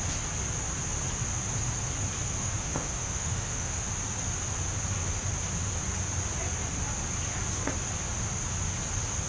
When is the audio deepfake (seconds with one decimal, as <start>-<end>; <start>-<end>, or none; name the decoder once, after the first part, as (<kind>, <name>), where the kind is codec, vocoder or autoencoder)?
2.4-3.9 (autoencoder, DAC-VAE)